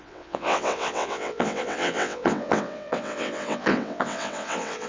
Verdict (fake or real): fake